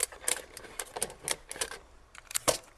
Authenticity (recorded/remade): recorded